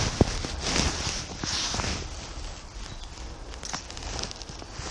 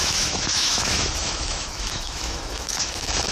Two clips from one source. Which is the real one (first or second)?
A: first